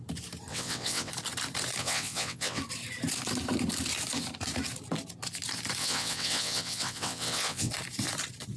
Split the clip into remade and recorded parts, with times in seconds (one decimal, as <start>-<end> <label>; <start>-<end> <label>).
0.0-0.5 recorded; 0.5-1.1 remade; 1.1-1.8 recorded; 1.8-2.6 remade; 2.6-5.8 recorded; 5.8-7.7 remade; 7.7-8.6 recorded